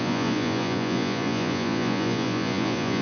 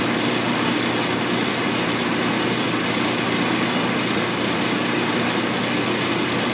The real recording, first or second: second